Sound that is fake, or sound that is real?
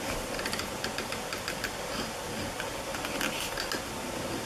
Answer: real